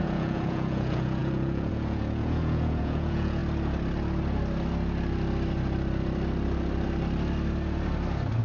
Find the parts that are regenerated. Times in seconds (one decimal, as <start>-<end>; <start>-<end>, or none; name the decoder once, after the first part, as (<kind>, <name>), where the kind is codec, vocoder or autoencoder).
0.0-3.4 (vocoder, Vocos)